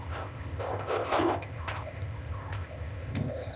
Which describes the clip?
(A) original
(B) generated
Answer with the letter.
B